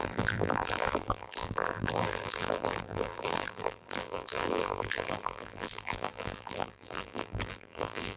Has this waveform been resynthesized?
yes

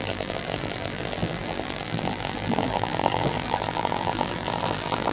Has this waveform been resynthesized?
yes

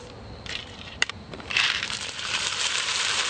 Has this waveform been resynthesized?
yes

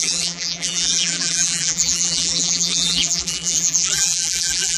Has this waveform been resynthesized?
yes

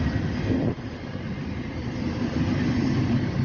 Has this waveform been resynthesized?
yes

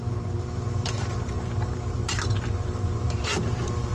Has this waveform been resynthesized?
yes